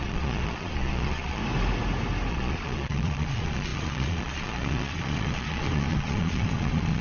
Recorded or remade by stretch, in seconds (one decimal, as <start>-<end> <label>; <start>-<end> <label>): 0.0-1.4 remade; 1.4-2.3 recorded; 2.3-7.0 remade